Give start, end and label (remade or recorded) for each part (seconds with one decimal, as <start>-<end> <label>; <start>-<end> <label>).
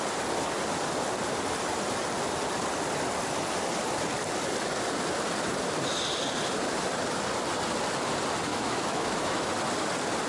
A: 0.0-8.5 recorded; 8.5-9.5 remade; 9.5-10.3 recorded